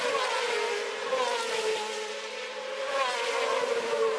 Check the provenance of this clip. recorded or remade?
recorded